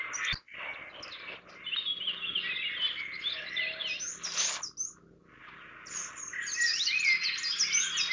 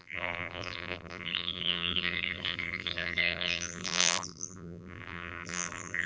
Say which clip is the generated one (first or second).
second